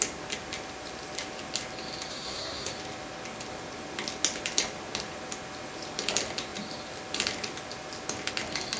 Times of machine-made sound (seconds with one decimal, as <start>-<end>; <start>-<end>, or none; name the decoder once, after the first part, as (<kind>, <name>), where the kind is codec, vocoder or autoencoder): 2.1-2.7 (codec, SNAC)